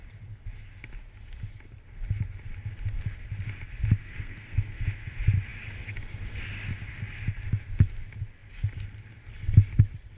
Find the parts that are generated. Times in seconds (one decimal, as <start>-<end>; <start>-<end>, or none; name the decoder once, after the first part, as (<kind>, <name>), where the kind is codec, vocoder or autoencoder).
4.0-5.1 (codec, SNAC)